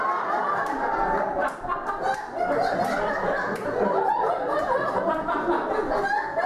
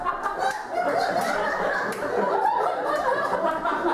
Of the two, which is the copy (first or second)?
second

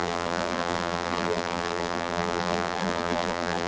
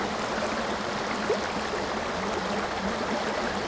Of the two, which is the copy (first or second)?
first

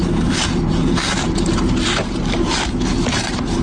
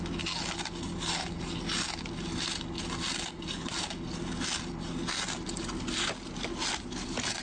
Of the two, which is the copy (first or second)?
first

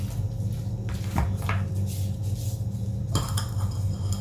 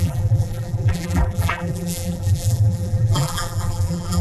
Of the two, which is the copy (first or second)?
second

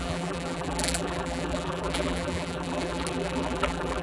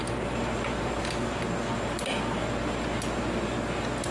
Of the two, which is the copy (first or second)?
first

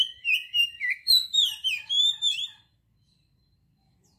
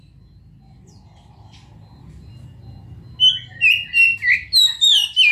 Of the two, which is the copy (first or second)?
first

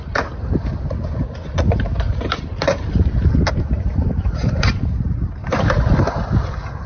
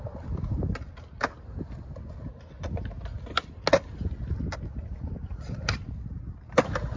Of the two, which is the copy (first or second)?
first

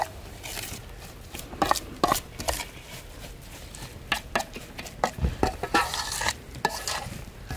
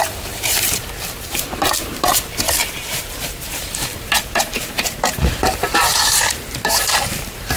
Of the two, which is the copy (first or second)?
second